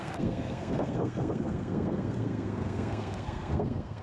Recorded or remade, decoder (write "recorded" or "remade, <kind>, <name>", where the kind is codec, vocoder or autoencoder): remade, codec, SNAC